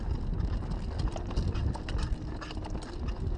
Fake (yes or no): no